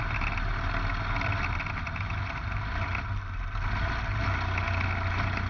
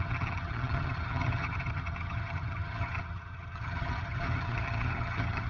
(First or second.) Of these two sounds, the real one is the first